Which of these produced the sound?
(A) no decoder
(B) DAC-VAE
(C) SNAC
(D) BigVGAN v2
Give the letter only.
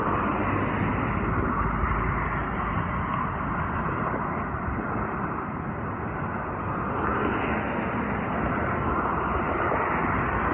A